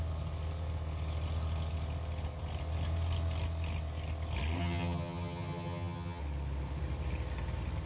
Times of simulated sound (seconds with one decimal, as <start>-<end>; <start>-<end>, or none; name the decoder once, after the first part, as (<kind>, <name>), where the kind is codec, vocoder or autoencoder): 4.6-6.2 (vocoder, HiFi-GAN)